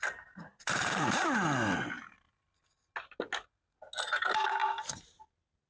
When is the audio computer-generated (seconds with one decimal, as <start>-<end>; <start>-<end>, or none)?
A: 0.5-2.9